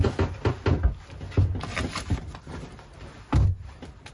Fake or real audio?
real